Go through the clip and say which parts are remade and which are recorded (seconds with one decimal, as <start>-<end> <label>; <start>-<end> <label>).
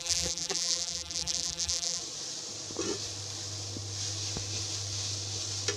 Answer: 0.0-2.0 remade; 2.0-5.8 recorded